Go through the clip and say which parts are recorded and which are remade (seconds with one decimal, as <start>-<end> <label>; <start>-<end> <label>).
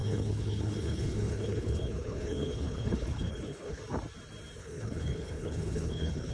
0.0-3.8 remade; 3.8-4.6 recorded; 4.6-6.3 remade